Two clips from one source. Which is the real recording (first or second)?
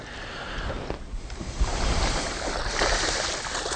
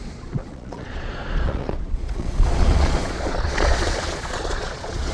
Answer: first